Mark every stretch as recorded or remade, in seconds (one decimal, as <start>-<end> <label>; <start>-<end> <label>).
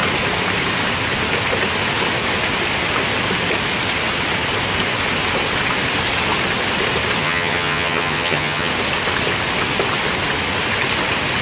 0.0-7.2 recorded; 7.2-8.7 remade; 8.7-11.4 recorded